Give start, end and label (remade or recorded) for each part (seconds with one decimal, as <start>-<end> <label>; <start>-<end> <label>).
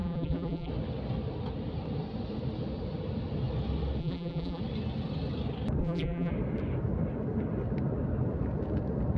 0.0-0.7 remade; 0.7-4.0 recorded; 4.0-4.6 remade; 4.6-5.8 recorded; 5.8-6.3 remade; 6.3-9.2 recorded